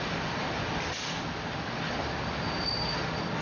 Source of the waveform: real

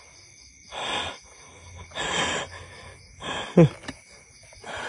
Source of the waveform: real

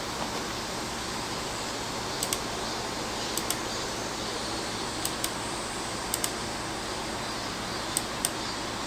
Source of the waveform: real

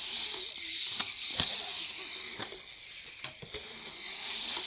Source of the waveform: real